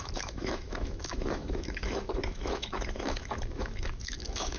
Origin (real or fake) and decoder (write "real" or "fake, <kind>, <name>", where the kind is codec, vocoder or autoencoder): fake, autoencoder, DAC-VAE